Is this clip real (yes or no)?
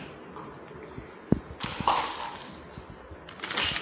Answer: yes